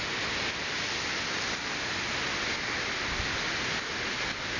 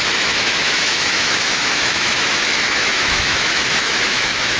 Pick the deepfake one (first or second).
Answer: second